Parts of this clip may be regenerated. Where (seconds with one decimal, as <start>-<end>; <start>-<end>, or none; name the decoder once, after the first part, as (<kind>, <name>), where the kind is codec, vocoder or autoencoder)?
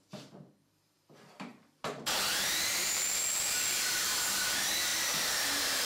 0.0-5.8 (vocoder, BigVGAN v2)